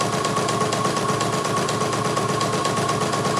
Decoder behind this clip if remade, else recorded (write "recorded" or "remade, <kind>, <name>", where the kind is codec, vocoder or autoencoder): recorded